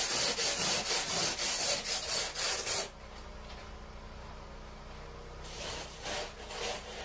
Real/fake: real